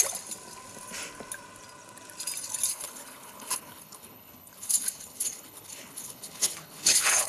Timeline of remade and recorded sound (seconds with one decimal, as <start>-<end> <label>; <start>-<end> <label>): 0.0-2.7 recorded; 2.7-7.3 remade